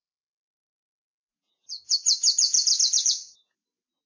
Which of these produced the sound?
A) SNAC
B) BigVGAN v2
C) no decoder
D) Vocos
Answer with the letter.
D